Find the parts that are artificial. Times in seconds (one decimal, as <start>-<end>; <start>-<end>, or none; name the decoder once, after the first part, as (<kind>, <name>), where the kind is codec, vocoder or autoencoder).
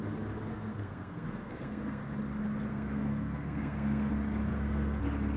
0.5-2.0 (codec, SNAC); 2.7-4.1; 4.5-5.0